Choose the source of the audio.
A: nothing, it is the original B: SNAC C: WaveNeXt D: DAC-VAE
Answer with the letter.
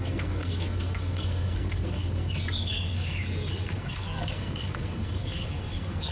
B